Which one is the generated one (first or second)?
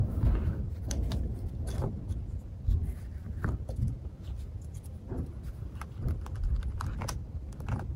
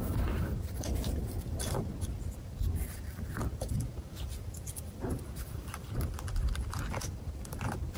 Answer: second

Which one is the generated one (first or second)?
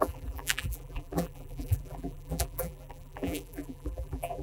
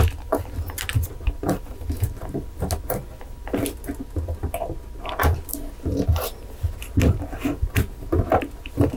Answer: first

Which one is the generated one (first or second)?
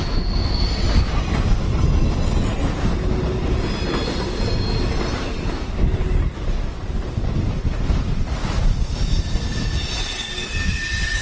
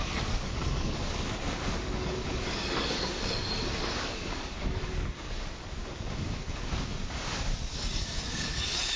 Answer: second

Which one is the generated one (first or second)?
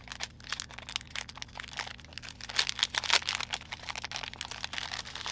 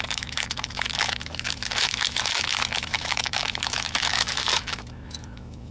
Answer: second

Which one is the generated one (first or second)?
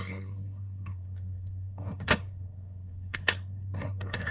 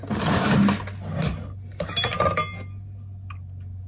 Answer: first